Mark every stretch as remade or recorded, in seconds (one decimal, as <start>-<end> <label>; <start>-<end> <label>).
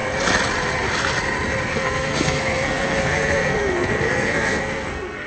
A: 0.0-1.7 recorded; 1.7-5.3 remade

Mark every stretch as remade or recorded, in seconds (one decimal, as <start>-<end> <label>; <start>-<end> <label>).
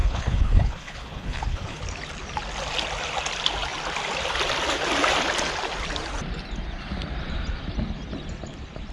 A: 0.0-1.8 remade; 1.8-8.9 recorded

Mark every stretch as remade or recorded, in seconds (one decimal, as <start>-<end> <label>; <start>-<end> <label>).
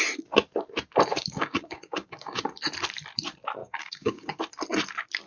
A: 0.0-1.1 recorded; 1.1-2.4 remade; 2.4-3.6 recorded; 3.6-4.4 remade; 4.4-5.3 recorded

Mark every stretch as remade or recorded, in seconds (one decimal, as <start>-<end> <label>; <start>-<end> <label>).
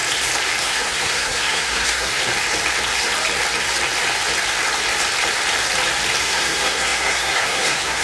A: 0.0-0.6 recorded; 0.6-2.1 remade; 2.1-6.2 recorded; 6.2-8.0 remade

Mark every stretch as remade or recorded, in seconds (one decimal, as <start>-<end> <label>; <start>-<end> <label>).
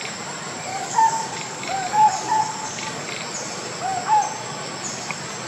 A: 0.0-0.7 recorded; 0.7-3.1 remade; 3.1-5.5 recorded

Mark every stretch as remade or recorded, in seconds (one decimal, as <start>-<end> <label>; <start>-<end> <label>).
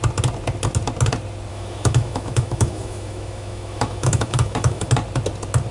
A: 0.0-1.5 recorded; 1.5-4.9 remade; 4.9-5.7 recorded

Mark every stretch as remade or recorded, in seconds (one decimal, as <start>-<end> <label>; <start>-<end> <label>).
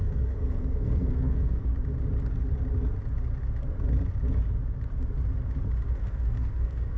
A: 0.0-1.7 remade; 1.7-5.9 recorded; 5.9-7.0 remade